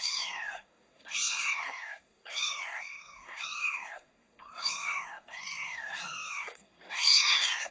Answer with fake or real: fake